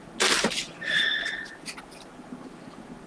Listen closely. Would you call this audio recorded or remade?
recorded